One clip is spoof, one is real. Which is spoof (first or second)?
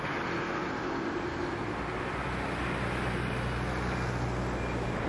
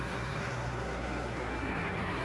second